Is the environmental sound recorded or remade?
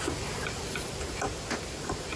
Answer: recorded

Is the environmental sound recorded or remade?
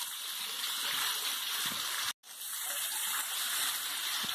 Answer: recorded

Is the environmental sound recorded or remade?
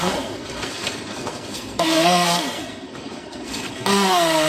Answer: remade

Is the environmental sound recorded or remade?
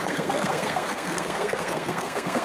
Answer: remade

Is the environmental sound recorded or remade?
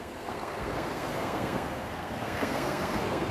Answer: remade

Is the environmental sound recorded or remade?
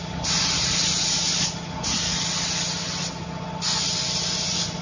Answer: recorded